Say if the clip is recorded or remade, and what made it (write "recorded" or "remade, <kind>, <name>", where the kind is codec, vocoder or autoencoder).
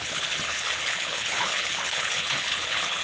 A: remade, codec, HILCodec